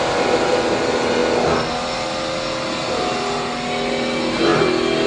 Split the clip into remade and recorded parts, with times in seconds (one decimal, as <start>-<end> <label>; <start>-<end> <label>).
0.0-5.1 recorded